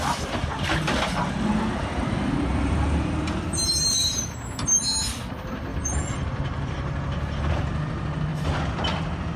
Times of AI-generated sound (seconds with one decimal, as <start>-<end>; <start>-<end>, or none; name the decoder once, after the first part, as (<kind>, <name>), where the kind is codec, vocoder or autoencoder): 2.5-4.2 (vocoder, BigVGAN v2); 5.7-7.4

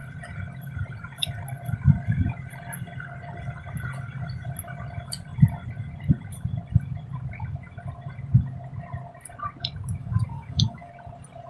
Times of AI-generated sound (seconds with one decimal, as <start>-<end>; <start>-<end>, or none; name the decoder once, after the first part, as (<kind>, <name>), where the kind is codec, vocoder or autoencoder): 10.0-10.9 (codec, DAC)

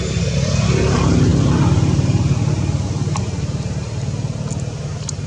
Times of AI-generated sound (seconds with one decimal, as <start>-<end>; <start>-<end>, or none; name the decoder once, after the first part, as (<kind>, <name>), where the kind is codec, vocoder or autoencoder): none

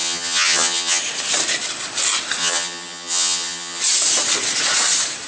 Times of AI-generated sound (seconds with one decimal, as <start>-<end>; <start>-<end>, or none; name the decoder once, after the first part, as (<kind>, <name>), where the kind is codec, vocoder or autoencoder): 0.0-1.0 (vocoder, HiFi-GAN); 2.4-3.8

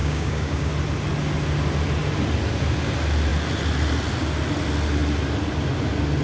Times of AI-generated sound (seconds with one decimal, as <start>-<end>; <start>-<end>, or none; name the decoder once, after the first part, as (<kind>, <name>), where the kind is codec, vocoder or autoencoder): 0.0-0.7 (codec, DAC)